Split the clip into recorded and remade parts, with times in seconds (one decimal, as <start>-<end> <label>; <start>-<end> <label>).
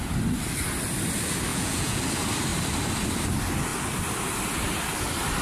0.0-1.5 recorded; 1.5-2.0 remade; 2.0-5.4 recorded